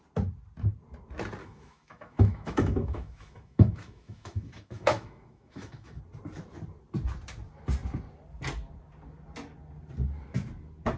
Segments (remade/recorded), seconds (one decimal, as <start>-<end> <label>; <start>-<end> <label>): 0.0-1.4 recorded; 1.4-6.0 remade; 6.0-11.0 recorded